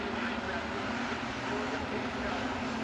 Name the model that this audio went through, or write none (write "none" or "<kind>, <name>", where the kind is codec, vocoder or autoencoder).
none